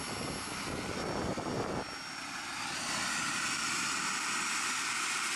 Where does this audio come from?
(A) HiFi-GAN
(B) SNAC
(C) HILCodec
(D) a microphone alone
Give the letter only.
D